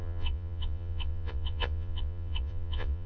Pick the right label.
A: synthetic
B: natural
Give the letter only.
A